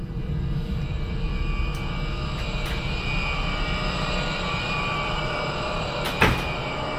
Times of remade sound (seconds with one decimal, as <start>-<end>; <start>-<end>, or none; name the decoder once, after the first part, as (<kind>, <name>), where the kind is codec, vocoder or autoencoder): 0.0-1.3 (vocoder, BigVGAN v2); 4.8-7.0